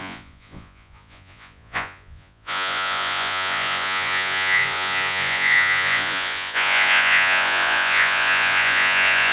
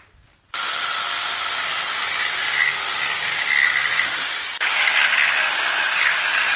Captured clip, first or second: second